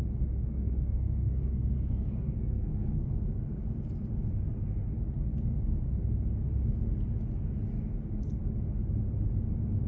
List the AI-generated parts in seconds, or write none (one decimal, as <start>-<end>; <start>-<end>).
0.4-3.1